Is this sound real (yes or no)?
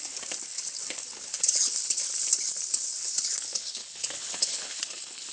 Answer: no